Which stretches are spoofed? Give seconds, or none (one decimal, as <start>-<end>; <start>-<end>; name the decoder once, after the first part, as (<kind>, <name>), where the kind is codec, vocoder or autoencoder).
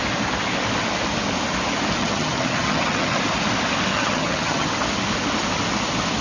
2.0-3.2 (vocoder, HiFi-GAN); 3.9-4.7